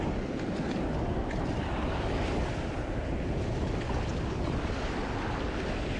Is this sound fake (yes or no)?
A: no